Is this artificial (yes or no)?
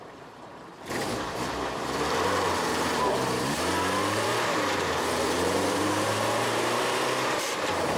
yes